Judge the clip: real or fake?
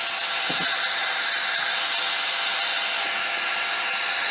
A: real